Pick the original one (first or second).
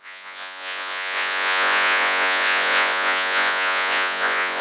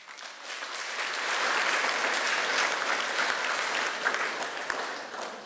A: second